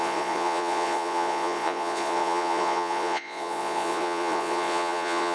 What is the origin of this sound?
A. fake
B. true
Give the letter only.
A